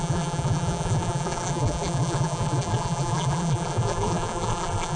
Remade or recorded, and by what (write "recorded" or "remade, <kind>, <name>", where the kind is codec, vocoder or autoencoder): remade, vocoder, BigVGAN v2